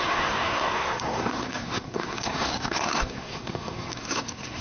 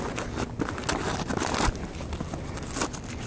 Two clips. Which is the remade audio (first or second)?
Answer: first